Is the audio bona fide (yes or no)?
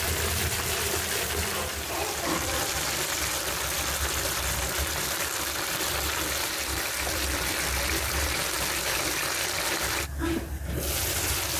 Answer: no